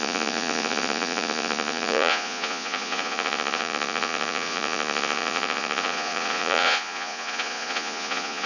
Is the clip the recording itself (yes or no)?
no